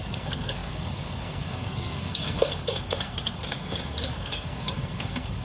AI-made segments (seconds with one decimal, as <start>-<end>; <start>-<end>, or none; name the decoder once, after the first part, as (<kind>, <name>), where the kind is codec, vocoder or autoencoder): 0.0-5.4 (codec, SNAC)